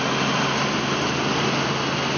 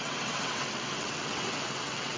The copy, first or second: second